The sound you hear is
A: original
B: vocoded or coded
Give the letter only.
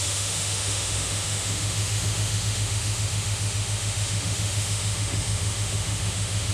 B